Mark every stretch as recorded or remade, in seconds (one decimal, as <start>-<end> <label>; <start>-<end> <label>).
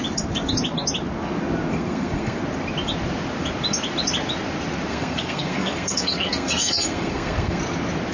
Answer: 0.0-1.7 recorded; 1.7-2.4 remade; 2.4-4.9 recorded; 4.9-7.6 remade; 7.6-8.1 recorded